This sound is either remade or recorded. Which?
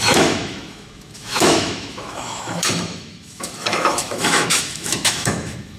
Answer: remade